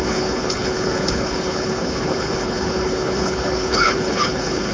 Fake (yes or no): yes